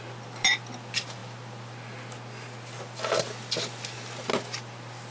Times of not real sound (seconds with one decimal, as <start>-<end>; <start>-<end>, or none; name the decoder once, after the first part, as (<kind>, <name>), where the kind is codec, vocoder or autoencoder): none